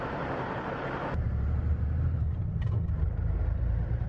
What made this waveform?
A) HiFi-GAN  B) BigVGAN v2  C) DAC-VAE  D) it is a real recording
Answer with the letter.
B